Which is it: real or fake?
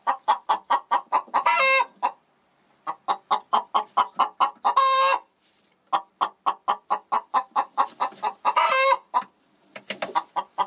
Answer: real